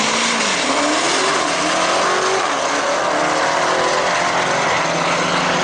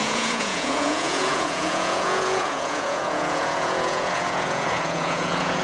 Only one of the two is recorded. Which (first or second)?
first